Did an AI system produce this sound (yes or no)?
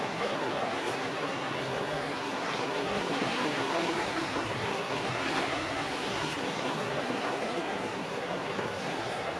yes